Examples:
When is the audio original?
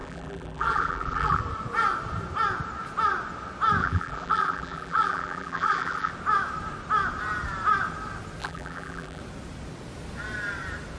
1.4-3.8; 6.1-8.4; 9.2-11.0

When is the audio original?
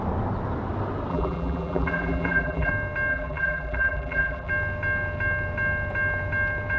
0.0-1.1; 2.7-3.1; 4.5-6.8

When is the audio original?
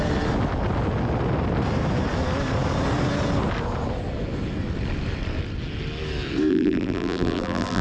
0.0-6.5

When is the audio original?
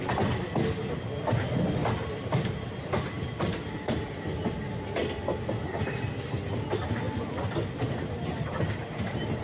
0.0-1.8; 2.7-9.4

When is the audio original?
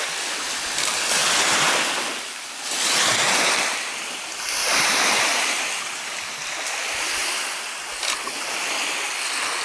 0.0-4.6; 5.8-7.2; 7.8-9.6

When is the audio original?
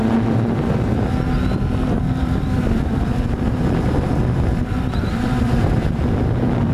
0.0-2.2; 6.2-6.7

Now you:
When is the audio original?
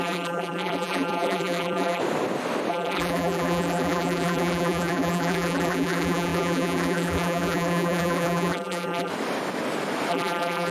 2.0-2.7; 9.1-10.1